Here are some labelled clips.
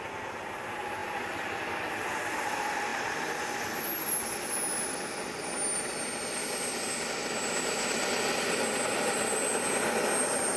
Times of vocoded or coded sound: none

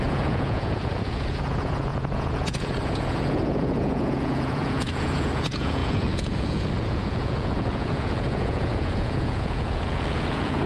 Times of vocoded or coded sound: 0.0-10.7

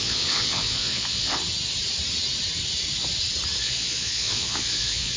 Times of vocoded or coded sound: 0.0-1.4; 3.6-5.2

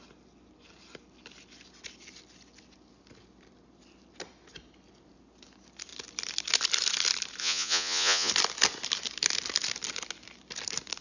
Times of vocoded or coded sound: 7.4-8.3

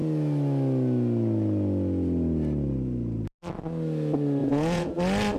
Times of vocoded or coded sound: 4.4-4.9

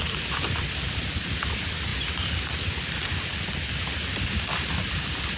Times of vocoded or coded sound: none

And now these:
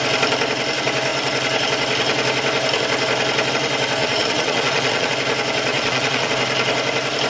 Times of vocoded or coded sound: 4.0-5.1; 5.7-6.3